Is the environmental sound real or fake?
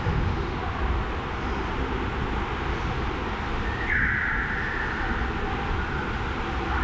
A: real